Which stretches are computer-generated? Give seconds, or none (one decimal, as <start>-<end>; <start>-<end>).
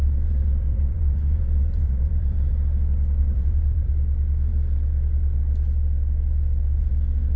0.0-2.5; 3.2-3.9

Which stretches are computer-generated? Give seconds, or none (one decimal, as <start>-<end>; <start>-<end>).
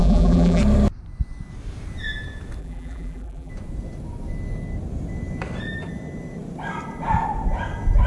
0.0-0.6; 2.6-3.5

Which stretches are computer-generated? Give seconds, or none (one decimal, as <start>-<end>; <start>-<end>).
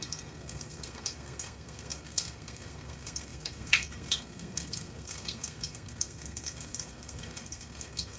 0.0-8.2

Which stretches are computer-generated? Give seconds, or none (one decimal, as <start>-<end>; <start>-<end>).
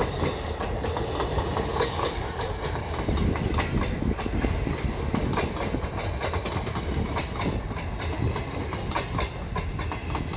1.7-2.3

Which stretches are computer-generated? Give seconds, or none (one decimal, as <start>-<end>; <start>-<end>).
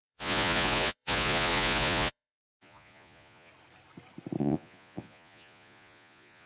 0.0-3.5; 4.4-6.5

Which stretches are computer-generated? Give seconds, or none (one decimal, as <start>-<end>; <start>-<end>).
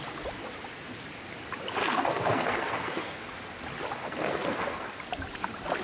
1.8-3.2; 4.0-5.0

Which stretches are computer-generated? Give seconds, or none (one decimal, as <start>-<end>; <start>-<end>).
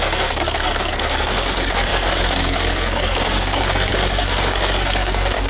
0.0-5.5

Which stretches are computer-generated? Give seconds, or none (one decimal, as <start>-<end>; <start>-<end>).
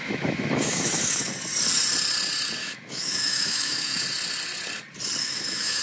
0.0-1.3; 2.6-4.0; 5.2-5.8